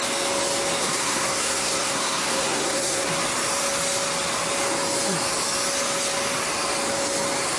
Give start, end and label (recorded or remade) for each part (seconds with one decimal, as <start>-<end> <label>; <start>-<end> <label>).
0.0-0.8 recorded; 0.8-3.1 remade; 3.1-7.6 recorded